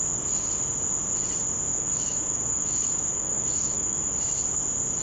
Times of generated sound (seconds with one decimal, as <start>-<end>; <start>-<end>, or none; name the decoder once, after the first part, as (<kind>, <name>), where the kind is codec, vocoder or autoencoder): 1.7-4.1 (autoencoder, DAC-VAE)